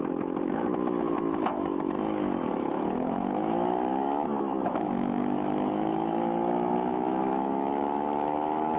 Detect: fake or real fake